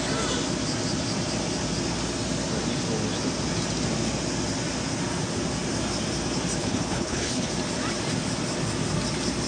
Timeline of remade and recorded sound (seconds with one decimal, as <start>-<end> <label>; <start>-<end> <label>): 0.0-6.6 recorded; 6.6-7.5 remade; 7.5-9.5 recorded